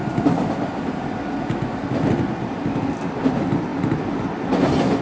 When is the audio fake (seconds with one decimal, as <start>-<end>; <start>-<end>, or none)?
none